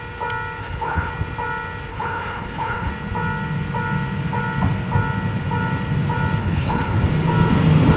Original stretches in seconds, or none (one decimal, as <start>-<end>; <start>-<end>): 0.0-0.6; 1.1-1.9; 2.9-6.4; 7.0-8.0